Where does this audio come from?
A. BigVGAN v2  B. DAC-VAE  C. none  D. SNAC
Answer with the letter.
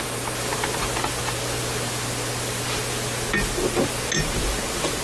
C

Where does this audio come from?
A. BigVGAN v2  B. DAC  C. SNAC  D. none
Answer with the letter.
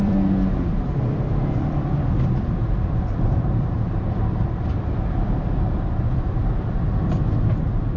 A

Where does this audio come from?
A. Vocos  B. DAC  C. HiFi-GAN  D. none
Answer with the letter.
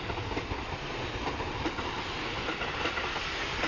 D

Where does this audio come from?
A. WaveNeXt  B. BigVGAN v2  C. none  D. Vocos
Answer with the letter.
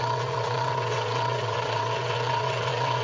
A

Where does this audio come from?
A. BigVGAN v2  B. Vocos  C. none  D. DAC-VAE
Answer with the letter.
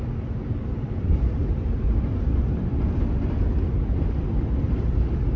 A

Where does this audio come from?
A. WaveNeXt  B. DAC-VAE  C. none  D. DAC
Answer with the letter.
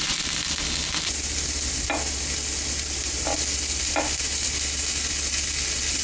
C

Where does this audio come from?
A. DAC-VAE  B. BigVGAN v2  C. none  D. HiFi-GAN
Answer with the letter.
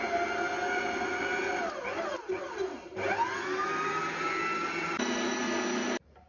C